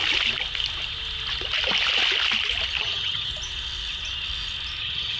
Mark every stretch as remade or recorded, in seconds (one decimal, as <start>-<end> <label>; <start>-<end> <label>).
0.0-2.8 recorded; 2.8-3.3 remade; 3.3-4.8 recorded; 4.8-5.2 remade